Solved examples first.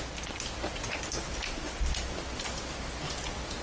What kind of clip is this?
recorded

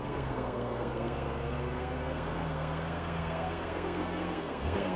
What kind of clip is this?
remade